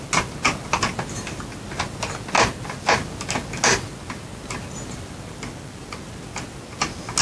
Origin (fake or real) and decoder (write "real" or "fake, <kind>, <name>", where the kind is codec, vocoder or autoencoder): real